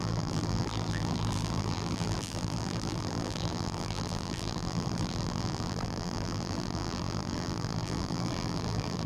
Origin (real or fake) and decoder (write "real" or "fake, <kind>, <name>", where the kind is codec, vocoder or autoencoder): fake, vocoder, BigVGAN v2